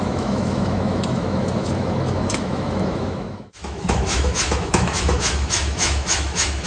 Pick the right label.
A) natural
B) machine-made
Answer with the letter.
B